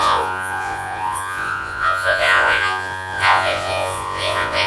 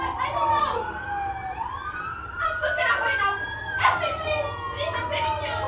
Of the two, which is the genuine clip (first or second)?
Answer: second